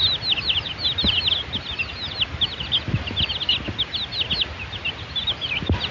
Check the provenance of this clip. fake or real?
real